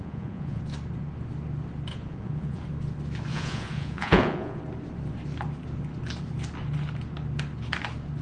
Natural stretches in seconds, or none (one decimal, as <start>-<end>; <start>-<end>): 0.6-1.9; 2.6-3.3; 4.6-8.2